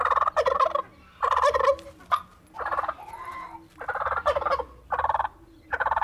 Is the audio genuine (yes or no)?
yes